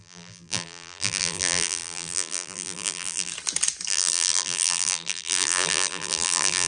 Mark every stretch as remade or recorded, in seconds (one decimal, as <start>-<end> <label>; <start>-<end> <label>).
0.0-3.3 remade; 3.3-3.9 recorded; 3.9-6.7 remade